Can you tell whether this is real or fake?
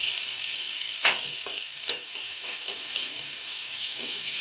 fake